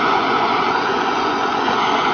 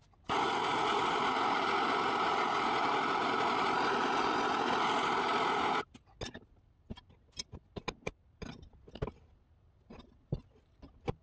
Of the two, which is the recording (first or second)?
second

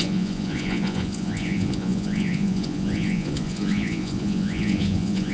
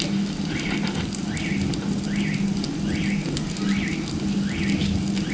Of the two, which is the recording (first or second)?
second